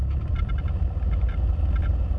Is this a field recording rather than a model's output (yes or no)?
yes